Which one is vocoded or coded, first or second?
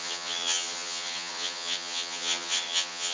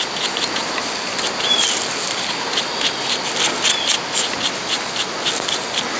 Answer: first